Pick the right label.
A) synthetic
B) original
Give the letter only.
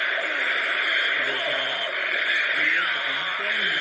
B